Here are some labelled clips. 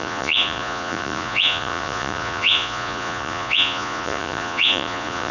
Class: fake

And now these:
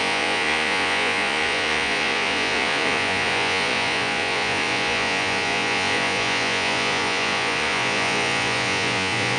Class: fake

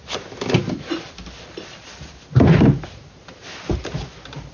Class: real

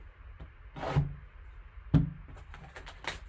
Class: real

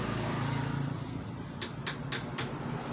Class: real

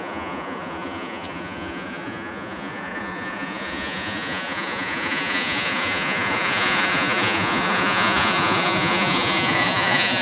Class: fake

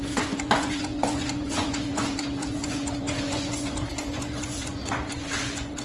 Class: fake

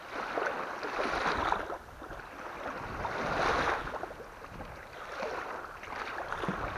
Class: real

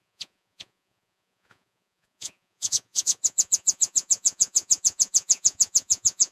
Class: fake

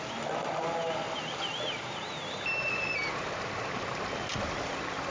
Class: real